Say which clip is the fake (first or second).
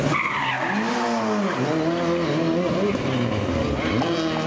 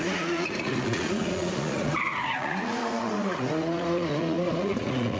second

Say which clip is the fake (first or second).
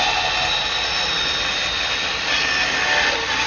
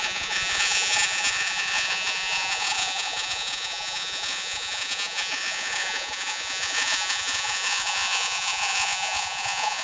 second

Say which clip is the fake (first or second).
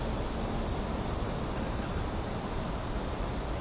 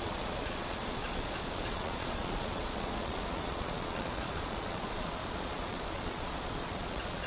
second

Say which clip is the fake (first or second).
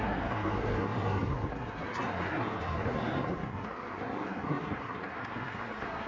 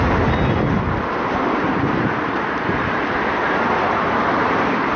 first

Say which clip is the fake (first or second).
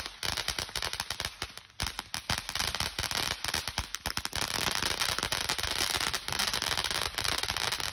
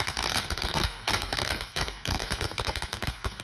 second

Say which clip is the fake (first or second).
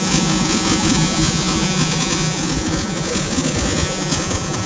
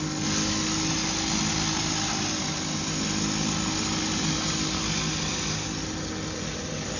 first